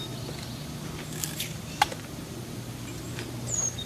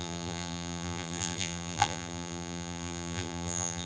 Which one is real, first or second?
first